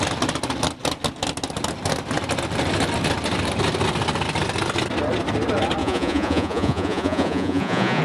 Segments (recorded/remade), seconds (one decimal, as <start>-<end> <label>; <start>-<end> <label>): 0.0-5.8 recorded; 5.8-8.0 remade